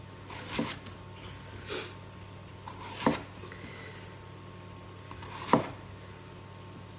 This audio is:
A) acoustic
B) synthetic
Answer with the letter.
A